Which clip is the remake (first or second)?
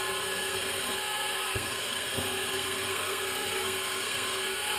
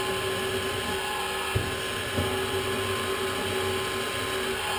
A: first